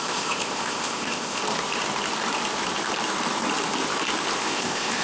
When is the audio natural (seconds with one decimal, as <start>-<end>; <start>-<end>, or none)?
1.4-4.4